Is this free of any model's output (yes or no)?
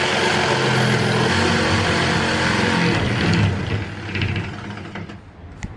yes